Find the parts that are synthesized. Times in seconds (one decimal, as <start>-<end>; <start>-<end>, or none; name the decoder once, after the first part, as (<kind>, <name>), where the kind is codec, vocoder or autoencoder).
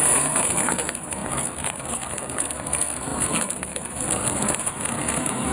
0.0-5.5 (codec, SNAC)